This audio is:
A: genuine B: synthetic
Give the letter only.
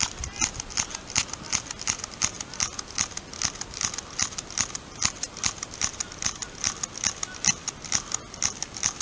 A